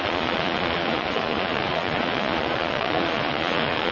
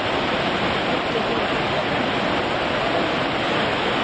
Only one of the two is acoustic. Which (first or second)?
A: second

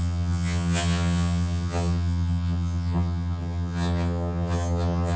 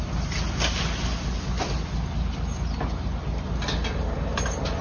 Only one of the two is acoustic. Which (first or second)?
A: second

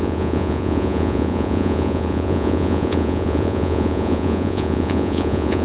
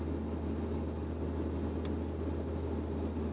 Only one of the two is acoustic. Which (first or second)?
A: second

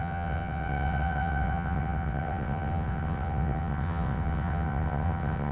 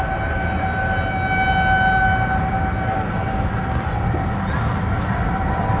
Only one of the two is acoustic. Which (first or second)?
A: second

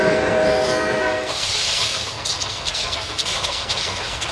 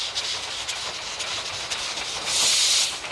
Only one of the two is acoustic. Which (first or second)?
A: second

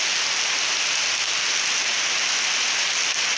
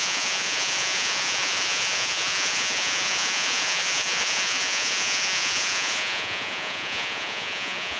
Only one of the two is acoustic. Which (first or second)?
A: first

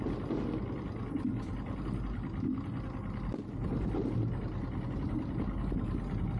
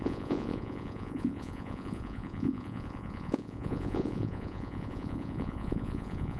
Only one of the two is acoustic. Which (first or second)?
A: first